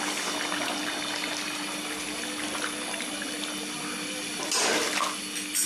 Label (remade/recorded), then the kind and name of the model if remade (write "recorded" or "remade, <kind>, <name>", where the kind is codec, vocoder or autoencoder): recorded